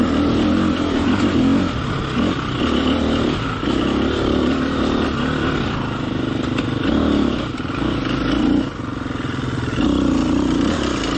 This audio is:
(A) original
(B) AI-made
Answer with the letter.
A